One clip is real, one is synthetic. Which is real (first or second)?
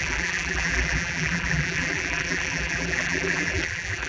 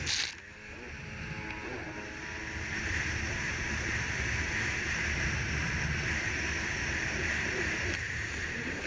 second